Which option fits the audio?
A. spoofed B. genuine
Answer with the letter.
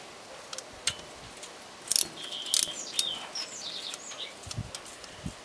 B